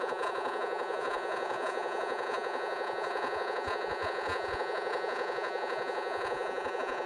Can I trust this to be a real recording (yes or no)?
no